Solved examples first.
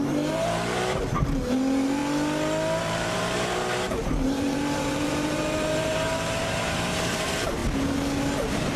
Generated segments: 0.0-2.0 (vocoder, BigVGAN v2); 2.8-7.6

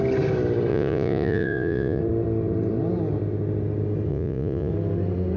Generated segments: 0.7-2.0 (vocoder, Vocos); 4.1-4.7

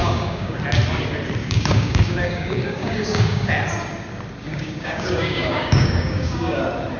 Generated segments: 0.0-0.6 (codec, DAC); 1.4-3.5; 4.5-6.6